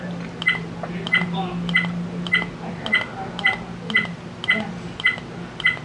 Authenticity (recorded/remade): recorded